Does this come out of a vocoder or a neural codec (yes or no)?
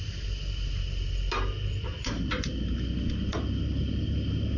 no